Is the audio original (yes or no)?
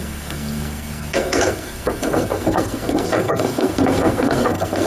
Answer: no